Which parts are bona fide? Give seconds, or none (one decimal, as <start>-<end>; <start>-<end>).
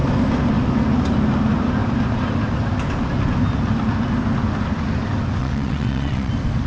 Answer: 0.0-5.4; 6.3-6.7